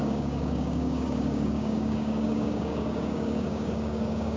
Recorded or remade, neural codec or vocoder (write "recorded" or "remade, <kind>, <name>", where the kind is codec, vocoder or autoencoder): remade, codec, DAC